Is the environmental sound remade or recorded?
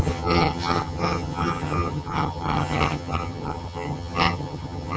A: remade